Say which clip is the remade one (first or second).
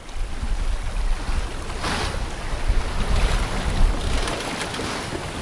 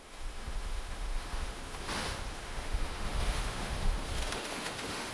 second